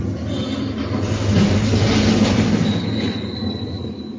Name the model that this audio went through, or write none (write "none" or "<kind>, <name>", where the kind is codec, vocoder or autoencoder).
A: none